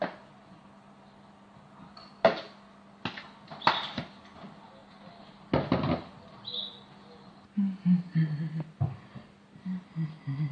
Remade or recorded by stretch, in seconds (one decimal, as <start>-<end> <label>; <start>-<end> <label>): 0.0-10.5 recorded